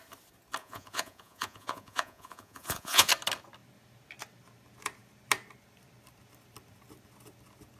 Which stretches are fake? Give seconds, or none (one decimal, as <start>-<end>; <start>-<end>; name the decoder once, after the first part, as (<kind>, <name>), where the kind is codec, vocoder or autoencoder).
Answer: 0.6-3.1 (vocoder, Vocos)